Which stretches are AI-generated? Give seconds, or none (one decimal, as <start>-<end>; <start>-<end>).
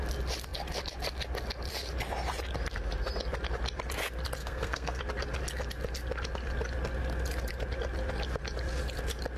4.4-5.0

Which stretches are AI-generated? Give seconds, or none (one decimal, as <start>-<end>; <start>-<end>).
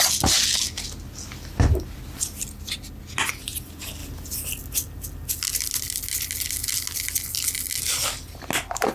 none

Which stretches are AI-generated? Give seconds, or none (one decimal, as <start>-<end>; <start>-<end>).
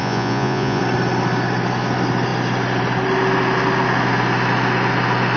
0.0-0.8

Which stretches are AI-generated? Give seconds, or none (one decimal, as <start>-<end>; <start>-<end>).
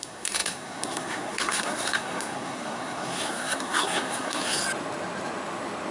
0.0-4.6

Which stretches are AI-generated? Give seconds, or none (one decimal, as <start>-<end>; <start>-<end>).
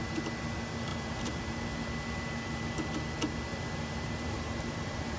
0.9-1.6; 3.5-5.2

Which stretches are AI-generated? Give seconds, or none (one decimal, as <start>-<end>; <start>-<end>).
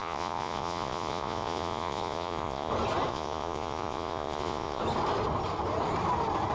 0.0-2.7; 3.1-4.8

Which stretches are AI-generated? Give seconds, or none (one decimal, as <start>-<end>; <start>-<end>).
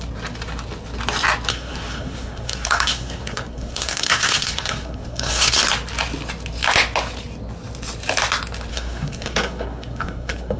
1.5-5.6; 8.7-10.6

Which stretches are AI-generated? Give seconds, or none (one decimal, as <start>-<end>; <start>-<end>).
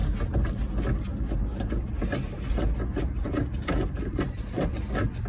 none